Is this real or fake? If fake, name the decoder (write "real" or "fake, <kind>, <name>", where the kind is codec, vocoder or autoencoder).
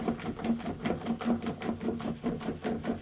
real